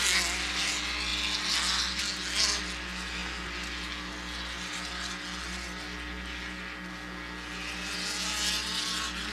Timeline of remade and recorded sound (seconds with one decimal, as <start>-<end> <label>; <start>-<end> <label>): 0.0-9.3 recorded